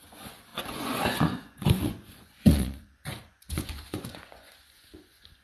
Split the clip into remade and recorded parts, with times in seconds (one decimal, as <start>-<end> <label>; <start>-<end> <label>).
0.0-5.4 remade